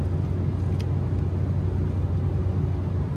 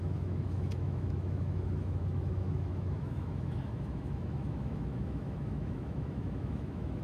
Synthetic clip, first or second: second